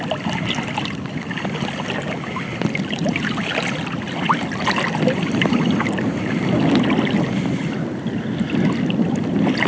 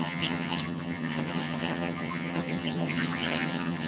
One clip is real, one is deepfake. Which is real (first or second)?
first